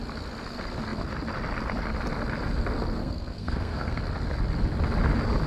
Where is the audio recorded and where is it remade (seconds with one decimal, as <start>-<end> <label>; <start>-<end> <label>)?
0.0-3.0 recorded; 3.0-4.0 remade; 4.0-5.5 recorded